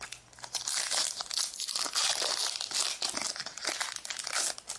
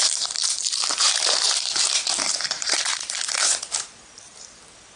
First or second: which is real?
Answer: first